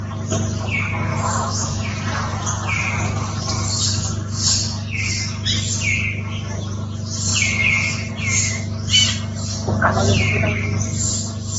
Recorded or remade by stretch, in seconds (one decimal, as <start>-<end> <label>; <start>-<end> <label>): 0.0-1.1 recorded; 1.1-1.9 remade; 1.9-11.6 recorded